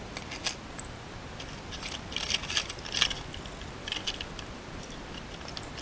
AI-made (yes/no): no